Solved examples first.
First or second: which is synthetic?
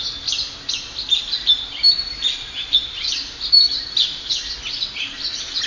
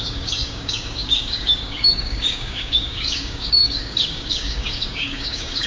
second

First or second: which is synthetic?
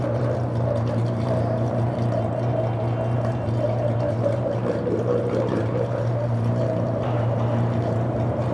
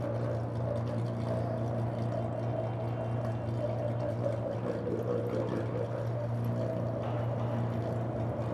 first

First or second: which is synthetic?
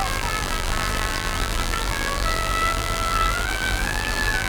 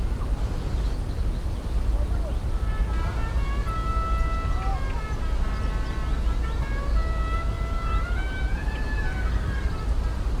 first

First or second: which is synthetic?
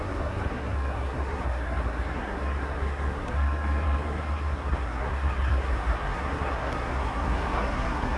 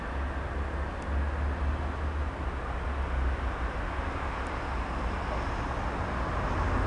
first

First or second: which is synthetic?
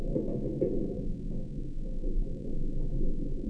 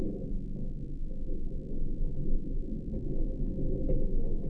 first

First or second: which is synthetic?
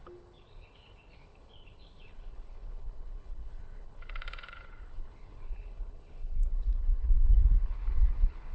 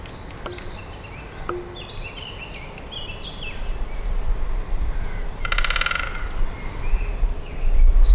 first